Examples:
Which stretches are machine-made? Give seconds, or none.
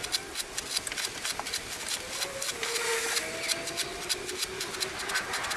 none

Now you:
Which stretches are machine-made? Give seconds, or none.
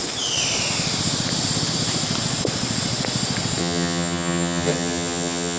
3.6-5.6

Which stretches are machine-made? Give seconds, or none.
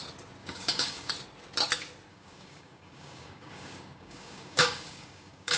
0.4-1.1; 2.1-5.6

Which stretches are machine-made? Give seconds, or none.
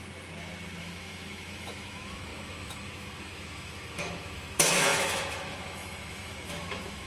0.8-7.1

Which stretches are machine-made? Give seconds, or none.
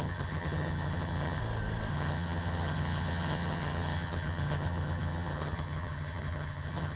0.0-1.4; 1.9-7.0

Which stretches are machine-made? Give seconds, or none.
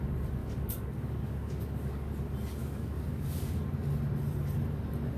0.4-2.1; 2.6-3.6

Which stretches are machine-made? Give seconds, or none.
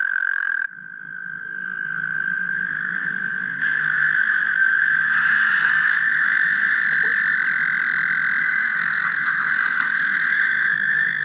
0.0-6.8; 8.4-11.2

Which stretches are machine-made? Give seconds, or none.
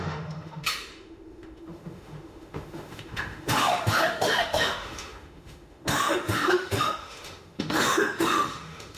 0.0-9.0